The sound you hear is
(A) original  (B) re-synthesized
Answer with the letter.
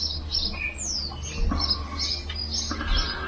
A